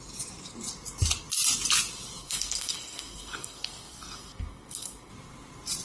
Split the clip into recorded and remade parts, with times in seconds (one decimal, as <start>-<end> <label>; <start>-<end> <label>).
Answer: 0.0-2.2 recorded; 2.2-5.1 remade; 5.1-5.8 recorded